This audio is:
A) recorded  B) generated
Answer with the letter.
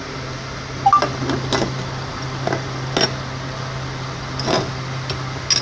A